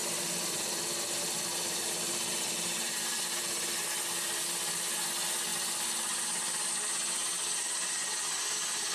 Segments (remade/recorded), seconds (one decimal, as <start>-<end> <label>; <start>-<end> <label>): 0.0-3.6 remade; 3.6-8.9 recorded